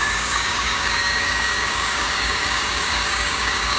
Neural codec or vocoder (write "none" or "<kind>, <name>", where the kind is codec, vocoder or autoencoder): codec, DAC